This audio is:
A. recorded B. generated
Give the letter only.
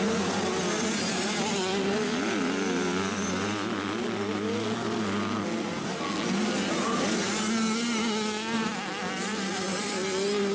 A